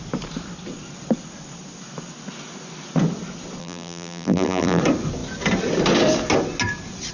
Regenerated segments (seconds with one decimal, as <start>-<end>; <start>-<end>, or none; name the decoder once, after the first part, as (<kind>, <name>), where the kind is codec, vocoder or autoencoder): 3.6-4.8 (vocoder, BigVGAN v2)